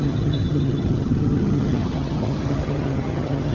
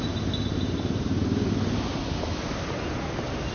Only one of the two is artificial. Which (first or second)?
first